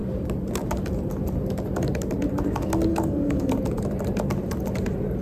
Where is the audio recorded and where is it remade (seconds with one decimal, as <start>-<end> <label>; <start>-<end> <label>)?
0.0-2.9 recorded; 2.9-3.6 remade; 3.6-5.2 recorded